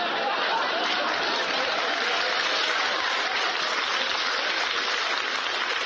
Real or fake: real